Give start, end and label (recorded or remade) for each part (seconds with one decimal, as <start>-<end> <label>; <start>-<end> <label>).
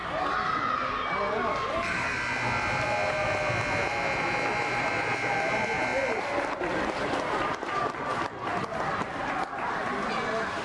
0.0-10.6 recorded